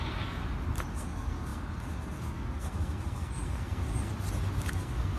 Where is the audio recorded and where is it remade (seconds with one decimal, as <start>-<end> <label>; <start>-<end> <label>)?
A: 0.0-0.4 remade; 0.4-0.9 recorded; 0.9-4.1 remade; 4.1-4.7 recorded; 4.7-5.2 remade